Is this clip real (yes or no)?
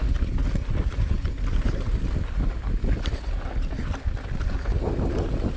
yes